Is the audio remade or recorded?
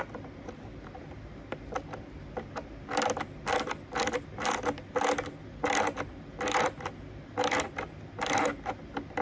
recorded